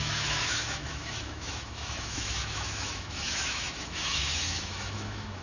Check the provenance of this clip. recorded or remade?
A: remade